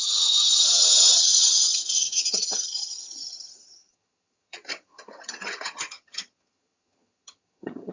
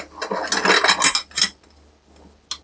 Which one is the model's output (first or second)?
first